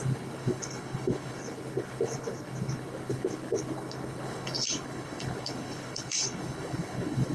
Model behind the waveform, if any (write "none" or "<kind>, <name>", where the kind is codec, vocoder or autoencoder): codec, HILCodec